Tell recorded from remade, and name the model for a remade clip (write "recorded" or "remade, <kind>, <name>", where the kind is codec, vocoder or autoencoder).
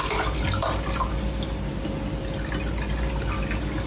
recorded